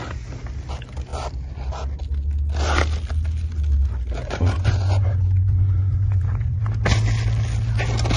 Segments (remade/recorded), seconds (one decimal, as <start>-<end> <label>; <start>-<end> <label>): 0.0-4.2 recorded; 4.2-6.6 remade; 6.6-8.2 recorded